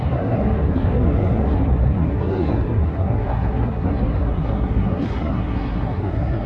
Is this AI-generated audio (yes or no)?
yes